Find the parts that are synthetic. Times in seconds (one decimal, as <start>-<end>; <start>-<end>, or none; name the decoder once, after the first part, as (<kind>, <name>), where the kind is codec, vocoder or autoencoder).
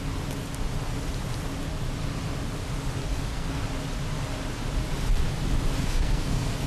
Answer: 3.1-3.6 (codec, SNAC); 5.8-6.7